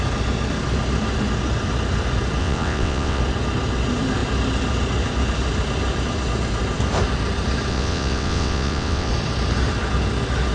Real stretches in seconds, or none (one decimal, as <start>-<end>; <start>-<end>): 0.0-2.4; 3.2-7.7; 9.1-10.5

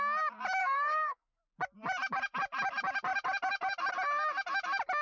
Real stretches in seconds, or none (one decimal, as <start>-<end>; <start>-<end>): 0.0-0.6; 1.4-5.0

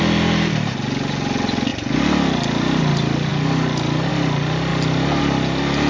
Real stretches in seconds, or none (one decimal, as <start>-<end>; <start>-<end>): 0.0-5.9

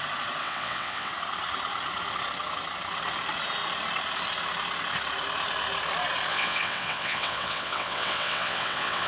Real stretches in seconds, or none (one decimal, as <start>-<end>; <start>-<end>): 0.0-0.4; 1.1-6.3

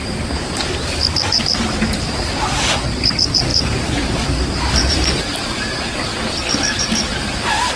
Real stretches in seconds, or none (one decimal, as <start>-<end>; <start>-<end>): 6.1-6.6